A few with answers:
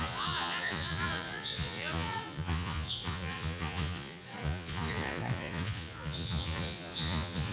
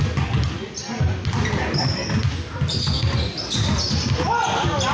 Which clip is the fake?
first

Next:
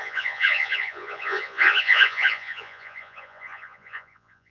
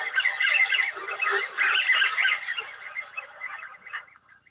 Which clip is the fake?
first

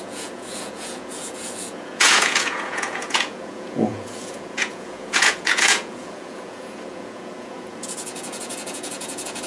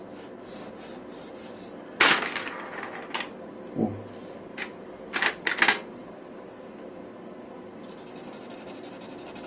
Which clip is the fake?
first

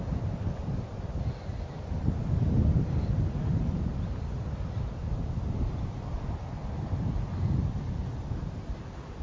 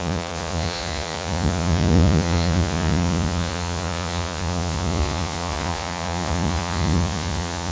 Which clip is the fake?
second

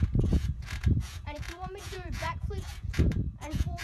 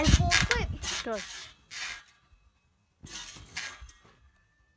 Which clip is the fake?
first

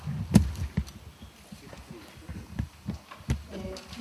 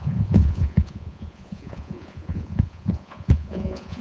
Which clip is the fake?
second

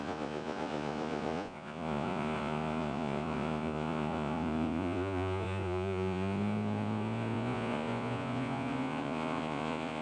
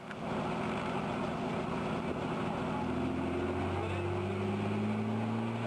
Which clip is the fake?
first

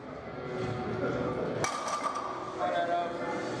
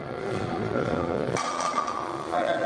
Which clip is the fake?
second